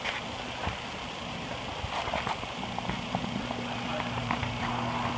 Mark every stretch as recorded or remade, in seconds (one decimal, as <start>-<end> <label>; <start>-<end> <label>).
0.0-3.9 recorded; 3.9-4.7 remade; 4.7-5.2 recorded